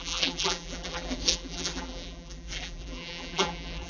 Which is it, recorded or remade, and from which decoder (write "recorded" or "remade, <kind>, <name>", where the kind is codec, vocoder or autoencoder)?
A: remade, vocoder, BigVGAN v2